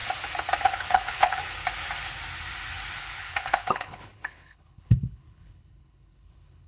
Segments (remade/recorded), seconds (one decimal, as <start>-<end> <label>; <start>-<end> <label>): 0.0-0.6 recorded; 0.6-1.4 remade; 1.4-3.0 recorded; 3.0-6.7 remade